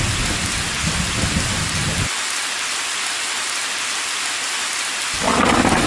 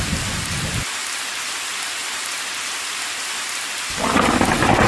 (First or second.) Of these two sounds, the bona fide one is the first